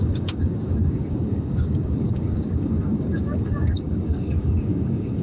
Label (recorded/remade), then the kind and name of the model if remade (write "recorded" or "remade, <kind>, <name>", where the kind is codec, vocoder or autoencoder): remade, codec, DAC